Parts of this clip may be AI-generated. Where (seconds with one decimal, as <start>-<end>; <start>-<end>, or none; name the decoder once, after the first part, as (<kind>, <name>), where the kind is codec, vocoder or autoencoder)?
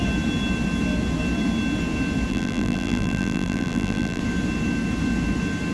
2.3-4.2 (vocoder, BigVGAN v2)